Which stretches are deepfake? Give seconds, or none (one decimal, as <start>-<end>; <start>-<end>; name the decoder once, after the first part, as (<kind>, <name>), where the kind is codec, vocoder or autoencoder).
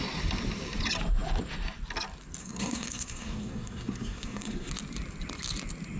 2.4-4.7 (codec, SNAC)